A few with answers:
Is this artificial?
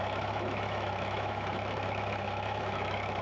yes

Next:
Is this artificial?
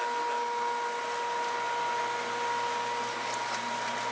no